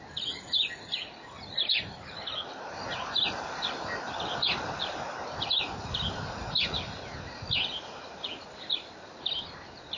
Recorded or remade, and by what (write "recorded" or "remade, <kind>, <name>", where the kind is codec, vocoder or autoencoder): recorded